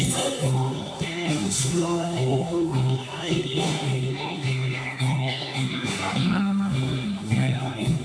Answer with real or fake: fake